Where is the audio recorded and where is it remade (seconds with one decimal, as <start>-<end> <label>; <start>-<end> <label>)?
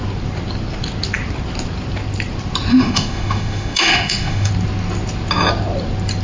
0.0-2.7 recorded; 2.7-4.5 remade; 4.5-6.2 recorded